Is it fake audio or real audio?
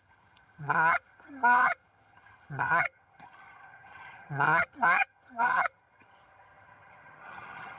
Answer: fake